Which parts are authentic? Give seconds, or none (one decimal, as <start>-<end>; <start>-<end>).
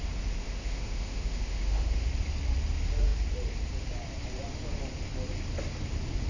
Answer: 0.0-0.4; 2.1-6.3